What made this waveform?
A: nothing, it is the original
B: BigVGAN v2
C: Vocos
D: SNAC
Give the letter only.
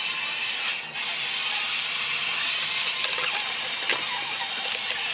A